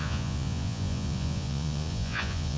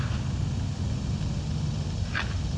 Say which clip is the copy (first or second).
first